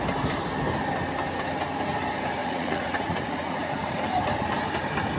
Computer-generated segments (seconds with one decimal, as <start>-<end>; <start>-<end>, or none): 2.4-4.0

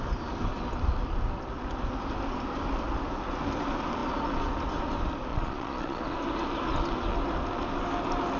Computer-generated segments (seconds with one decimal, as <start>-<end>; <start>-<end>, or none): 5.3-6.0

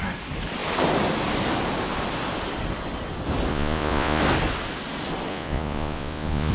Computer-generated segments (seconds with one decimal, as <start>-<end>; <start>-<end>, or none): 3.5-4.2; 5.3-6.5

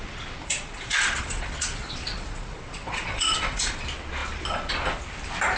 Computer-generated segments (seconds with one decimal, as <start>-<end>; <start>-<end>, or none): 0.4-3.8